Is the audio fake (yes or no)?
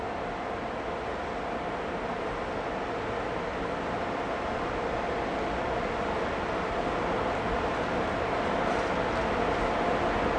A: no